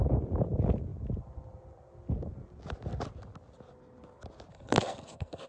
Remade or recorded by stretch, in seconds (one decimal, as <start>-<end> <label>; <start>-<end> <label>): 0.0-4.5 recorded; 4.5-5.5 remade